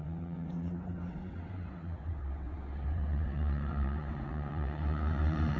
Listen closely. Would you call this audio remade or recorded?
remade